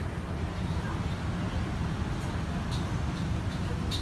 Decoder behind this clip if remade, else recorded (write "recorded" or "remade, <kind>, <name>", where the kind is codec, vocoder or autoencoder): recorded